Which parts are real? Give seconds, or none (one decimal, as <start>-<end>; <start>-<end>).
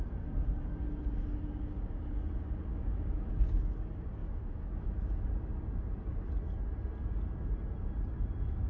0.0-2.7; 3.3-4.2; 5.3-8.7